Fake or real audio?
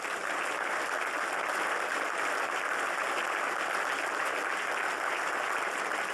real